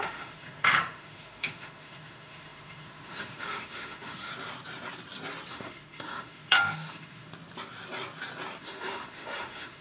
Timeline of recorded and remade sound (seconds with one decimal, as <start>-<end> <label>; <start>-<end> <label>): 0.0-4.3 remade; 4.3-5.5 recorded; 5.5-7.3 remade; 7.3-8.6 recorded; 8.6-9.8 remade